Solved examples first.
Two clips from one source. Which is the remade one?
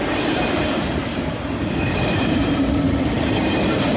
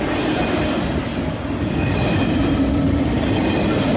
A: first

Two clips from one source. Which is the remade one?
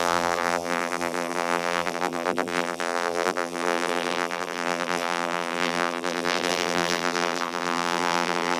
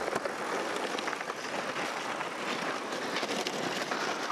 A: first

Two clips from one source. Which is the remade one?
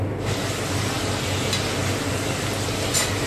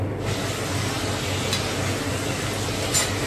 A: first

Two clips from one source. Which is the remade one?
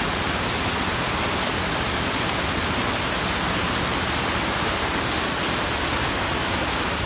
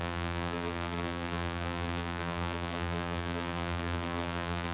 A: second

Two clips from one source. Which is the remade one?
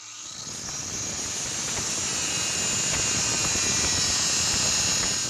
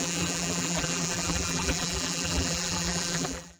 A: second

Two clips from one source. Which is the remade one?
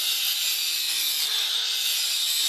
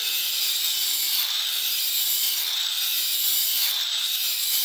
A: second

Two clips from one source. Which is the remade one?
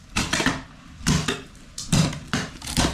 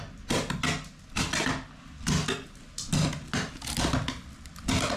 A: first